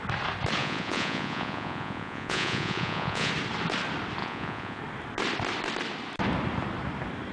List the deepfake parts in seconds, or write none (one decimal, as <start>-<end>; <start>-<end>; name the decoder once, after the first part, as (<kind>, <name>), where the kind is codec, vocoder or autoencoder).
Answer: 0.6-3.3 (vocoder, Vocos); 4.2-4.8

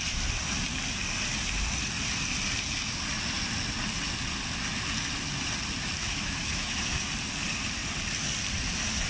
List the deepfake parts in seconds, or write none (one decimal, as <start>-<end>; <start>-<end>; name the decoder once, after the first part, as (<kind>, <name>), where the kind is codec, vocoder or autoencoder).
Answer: 6.0-7.0 (autoencoder, DAC-VAE)